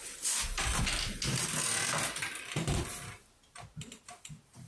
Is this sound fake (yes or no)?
no